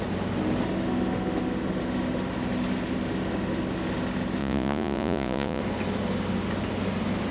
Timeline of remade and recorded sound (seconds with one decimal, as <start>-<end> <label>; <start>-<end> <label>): 0.0-4.4 recorded; 4.4-5.6 remade; 5.6-7.3 recorded